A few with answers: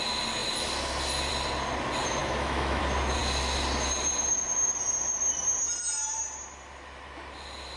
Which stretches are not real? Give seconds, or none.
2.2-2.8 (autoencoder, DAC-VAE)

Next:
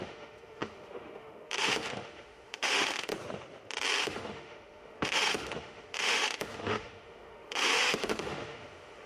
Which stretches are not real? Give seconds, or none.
0.0-3.1 (autoencoder, DAC-VAE); 4.0-9.1

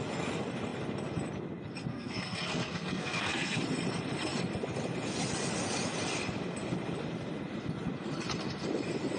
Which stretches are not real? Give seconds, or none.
1.9-3.6 (codec, SNAC)

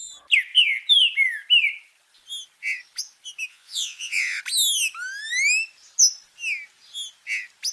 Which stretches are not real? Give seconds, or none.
3.5-4.4 (vocoder, Vocos)

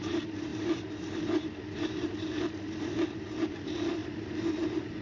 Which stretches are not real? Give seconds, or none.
0.0-5.0 (vocoder, BigVGAN v2)